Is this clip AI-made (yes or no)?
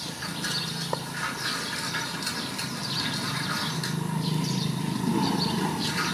no